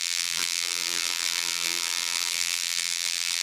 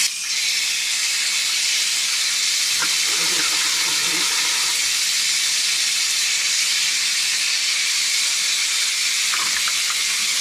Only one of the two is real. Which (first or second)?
second